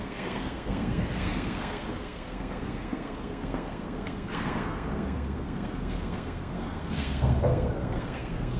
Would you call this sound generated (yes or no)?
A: yes